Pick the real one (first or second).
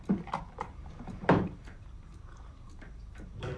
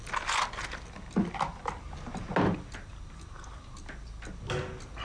second